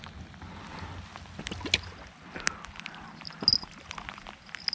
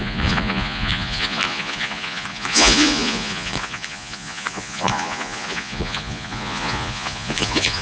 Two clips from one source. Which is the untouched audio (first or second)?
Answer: first